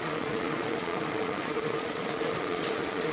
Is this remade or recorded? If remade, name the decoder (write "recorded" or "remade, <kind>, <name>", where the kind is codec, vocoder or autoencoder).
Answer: remade, vocoder, Vocos